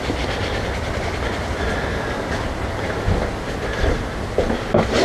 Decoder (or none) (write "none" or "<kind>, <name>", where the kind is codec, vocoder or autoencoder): none